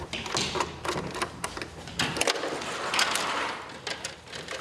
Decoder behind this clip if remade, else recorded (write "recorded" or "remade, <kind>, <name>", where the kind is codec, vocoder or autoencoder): recorded